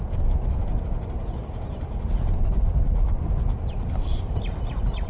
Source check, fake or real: real